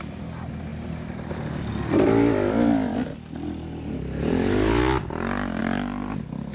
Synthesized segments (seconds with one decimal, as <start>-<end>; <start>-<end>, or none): none